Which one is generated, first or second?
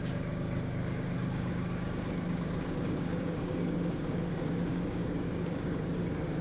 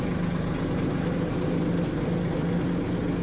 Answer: first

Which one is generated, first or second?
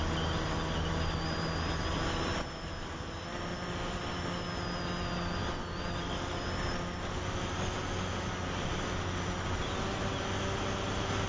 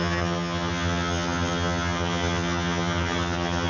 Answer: second